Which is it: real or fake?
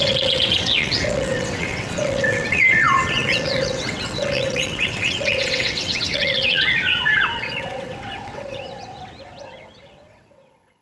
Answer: fake